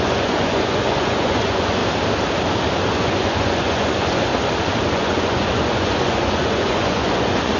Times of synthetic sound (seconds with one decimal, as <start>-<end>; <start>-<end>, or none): 0.0-1.8; 2.9-4.3; 4.9-7.6